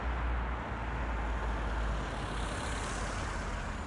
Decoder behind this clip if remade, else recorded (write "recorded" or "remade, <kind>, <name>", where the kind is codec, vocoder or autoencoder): recorded